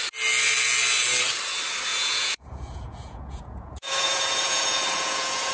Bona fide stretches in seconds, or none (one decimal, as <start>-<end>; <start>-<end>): 0.0-1.9